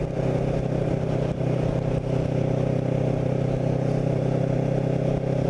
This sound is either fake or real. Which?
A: real